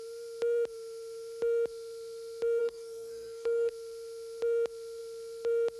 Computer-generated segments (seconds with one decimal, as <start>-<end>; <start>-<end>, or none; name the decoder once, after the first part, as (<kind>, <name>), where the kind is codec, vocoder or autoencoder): 2.6-3.7 (codec, SNAC)